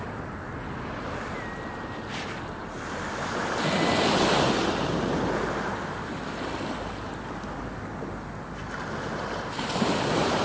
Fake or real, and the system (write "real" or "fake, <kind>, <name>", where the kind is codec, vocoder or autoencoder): real